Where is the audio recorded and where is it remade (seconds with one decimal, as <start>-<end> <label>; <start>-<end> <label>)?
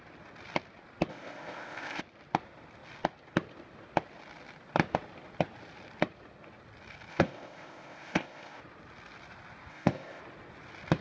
0.0-1.1 recorded; 1.1-2.0 remade; 2.0-7.1 recorded; 7.1-8.6 remade; 8.6-9.7 recorded; 9.7-10.2 remade; 10.2-11.0 recorded